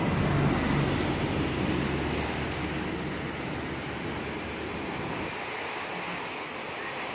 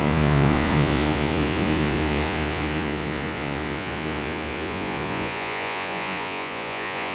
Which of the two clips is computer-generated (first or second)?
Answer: second